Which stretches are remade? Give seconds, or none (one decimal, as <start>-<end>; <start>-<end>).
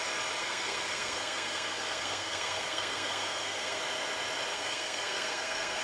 0.4-3.8; 4.5-5.8